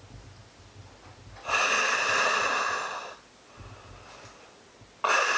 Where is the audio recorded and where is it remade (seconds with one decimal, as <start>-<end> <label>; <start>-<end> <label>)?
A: 0.0-5.4 recorded